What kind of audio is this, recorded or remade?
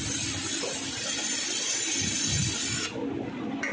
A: recorded